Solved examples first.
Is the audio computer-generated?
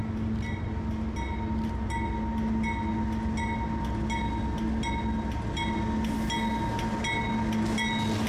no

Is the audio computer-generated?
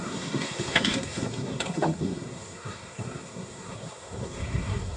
yes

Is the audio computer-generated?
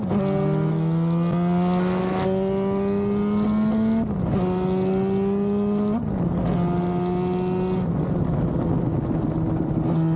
no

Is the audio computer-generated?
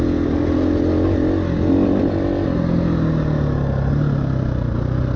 no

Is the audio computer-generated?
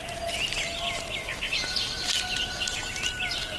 no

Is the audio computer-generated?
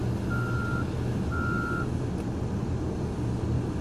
no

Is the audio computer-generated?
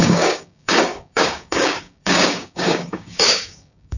yes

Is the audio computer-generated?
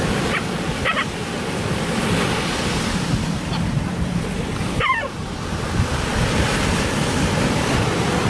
yes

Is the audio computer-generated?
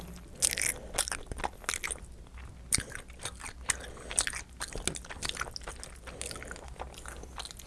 no